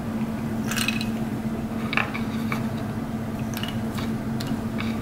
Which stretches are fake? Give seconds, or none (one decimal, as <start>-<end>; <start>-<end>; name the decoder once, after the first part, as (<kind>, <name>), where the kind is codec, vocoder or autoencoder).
none